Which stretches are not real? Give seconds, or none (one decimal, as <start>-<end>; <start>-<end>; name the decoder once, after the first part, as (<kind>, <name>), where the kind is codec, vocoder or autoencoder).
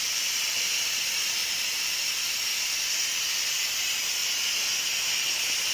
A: 0.0-1.4 (vocoder, BigVGAN v2); 2.1-2.5; 3.5-4.2; 5.0-5.7